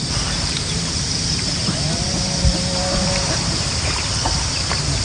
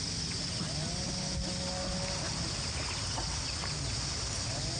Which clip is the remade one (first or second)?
first